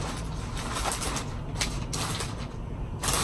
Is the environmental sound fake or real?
real